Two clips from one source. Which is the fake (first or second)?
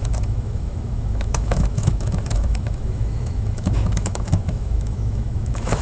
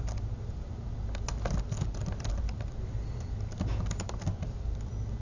first